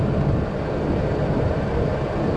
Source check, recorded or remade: recorded